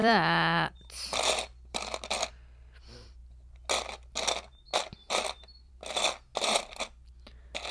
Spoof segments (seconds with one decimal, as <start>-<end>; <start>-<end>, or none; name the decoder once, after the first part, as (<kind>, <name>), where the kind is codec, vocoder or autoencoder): 0.0-2.3 (vocoder, BigVGAN v2)